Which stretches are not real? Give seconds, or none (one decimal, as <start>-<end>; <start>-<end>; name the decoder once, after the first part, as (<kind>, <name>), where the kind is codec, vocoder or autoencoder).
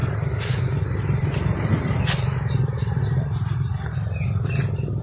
0.0-3.0 (vocoder, BigVGAN v2)